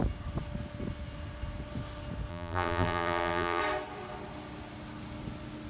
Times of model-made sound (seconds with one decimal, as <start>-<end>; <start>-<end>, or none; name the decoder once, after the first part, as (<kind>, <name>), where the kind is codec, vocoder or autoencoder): 2.3-3.6 (vocoder, BigVGAN v2)